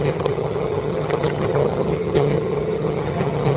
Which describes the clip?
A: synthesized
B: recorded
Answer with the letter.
A